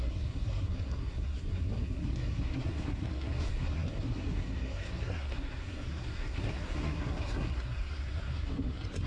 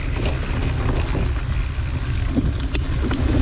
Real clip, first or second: second